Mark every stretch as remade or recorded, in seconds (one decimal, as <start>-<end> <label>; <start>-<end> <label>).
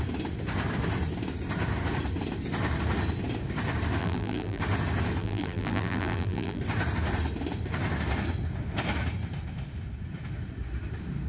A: 0.0-4.0 recorded; 4.0-4.6 remade; 4.6-5.2 recorded; 5.2-6.6 remade; 6.6-11.3 recorded